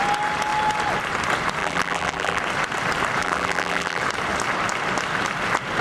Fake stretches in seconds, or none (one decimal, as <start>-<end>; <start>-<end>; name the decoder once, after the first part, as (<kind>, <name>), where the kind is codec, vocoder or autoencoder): 1.6-2.4 (vocoder, BigVGAN v2); 3.2-4.0